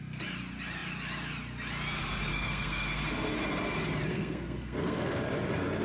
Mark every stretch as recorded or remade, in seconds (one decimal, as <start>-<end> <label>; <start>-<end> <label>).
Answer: 0.0-2.3 recorded; 2.3-3.0 remade; 3.0-4.1 recorded; 4.1-5.2 remade; 5.2-5.8 recorded